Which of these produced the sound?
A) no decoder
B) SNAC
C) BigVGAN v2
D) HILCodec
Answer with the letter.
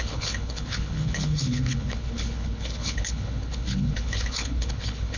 D